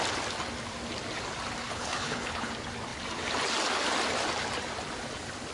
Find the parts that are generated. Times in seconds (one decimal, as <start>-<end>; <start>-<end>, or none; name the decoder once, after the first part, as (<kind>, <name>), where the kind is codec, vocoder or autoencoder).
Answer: 1.6-2.5 (codec, HILCodec)